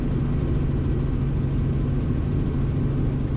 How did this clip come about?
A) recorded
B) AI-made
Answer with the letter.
A